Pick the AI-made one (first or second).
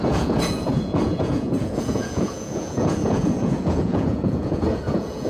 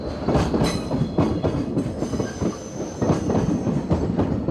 first